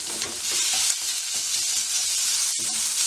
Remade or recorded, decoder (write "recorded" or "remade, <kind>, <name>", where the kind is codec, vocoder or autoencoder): remade, vocoder, BigVGAN v2